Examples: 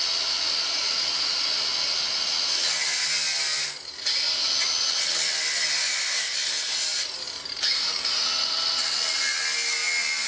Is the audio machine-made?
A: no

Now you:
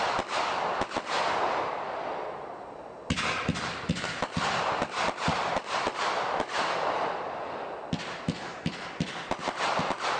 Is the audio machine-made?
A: no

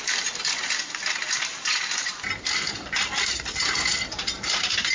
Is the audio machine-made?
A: yes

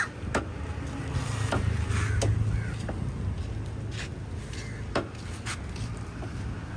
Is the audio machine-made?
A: no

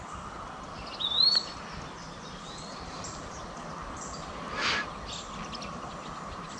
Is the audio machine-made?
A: no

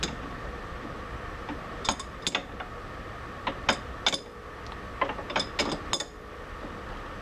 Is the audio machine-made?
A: no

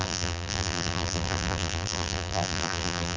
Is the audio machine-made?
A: yes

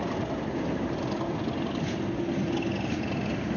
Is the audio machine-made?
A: no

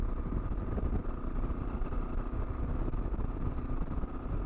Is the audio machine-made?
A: no